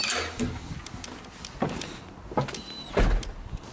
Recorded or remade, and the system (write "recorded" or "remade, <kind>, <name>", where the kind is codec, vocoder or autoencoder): recorded